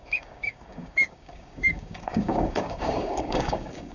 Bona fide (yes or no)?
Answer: no